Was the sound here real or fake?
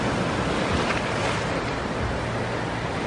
real